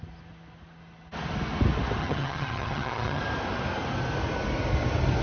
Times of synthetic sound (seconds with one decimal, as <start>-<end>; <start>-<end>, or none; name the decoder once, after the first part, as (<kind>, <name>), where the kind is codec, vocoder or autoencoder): 2.0-3.2 (vocoder, HiFi-GAN)